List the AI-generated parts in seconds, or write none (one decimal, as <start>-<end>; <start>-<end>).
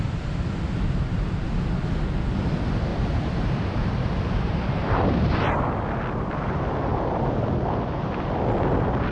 2.9-5.1